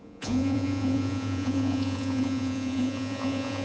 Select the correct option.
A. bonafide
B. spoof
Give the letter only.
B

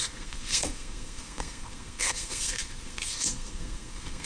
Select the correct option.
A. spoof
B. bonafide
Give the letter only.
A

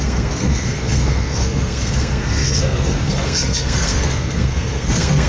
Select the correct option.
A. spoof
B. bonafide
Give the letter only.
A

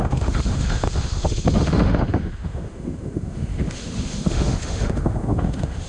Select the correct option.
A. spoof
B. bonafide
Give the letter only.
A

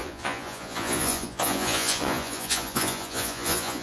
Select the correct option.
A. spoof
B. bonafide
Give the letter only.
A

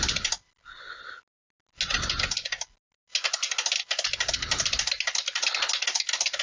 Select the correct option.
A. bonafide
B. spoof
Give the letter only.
A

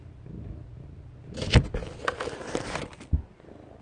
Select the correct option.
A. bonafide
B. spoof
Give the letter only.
A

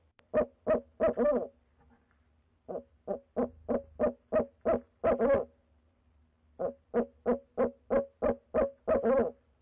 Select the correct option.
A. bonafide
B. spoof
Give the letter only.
A